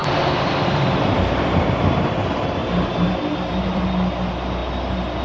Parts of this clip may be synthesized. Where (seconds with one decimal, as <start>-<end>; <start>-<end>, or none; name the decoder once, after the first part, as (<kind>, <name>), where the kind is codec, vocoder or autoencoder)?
0.0-2.1 (vocoder, BigVGAN v2); 2.6-3.8